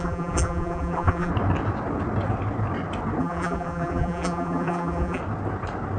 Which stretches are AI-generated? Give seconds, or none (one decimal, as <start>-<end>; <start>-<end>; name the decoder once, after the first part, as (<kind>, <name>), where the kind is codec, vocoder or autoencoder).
0.0-1.3 (vocoder, BigVGAN v2); 3.2-5.2

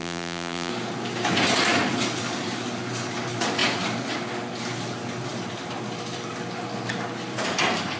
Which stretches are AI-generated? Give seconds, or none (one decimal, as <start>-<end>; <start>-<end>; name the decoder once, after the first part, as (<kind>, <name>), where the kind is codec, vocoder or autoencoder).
0.0-0.7 (vocoder, BigVGAN v2)

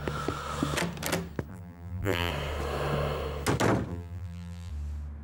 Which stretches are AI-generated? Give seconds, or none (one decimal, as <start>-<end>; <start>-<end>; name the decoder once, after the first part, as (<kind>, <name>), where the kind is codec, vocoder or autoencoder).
1.5-2.3 (vocoder, BigVGAN v2); 3.9-4.7

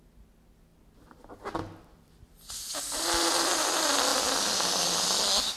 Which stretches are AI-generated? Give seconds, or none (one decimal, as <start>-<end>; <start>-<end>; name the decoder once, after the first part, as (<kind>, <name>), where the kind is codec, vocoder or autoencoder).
none

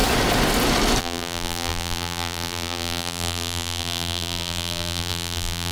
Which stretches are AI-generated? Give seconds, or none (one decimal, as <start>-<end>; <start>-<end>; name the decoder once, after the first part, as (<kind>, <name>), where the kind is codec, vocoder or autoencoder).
1.0-5.7 (vocoder, BigVGAN v2)

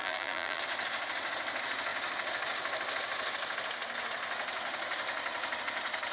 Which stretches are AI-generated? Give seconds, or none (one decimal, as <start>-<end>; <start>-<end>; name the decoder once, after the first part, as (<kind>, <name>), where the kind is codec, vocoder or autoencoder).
0.0-0.6 (vocoder, BigVGAN v2)

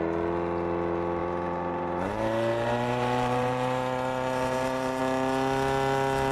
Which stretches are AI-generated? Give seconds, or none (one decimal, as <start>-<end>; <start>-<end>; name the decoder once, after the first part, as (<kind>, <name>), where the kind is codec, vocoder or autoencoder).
1.2-5.0 (vocoder, BigVGAN v2)

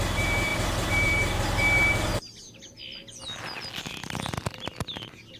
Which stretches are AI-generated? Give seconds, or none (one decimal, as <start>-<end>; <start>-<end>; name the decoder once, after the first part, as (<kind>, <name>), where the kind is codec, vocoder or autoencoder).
0.0-2.1 (vocoder, BigVGAN v2)